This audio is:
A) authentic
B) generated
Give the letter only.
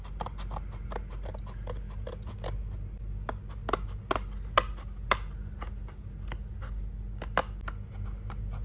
A